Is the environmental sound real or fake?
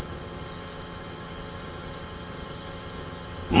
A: fake